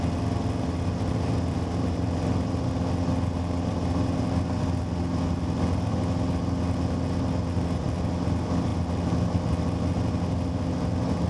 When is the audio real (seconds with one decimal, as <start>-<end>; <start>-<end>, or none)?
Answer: 0.0-11.3